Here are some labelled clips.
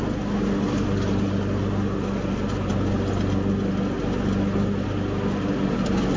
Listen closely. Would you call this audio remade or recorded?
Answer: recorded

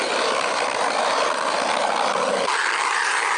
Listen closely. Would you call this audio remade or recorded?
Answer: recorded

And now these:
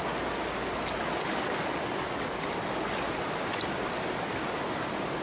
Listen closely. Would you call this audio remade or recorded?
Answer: recorded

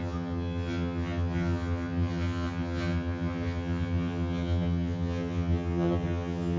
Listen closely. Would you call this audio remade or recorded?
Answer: remade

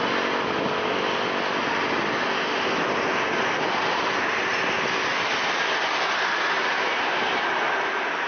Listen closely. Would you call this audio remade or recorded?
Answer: recorded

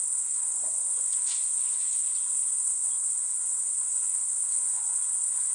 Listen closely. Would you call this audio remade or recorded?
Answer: remade